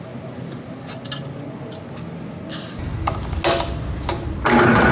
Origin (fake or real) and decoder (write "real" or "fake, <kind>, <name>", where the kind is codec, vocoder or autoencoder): real